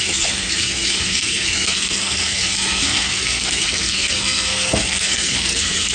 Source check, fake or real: fake